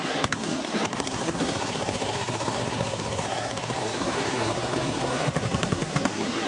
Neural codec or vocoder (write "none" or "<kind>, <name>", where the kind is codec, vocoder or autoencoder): codec, SNAC